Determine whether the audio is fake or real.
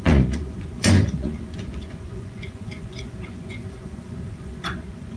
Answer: fake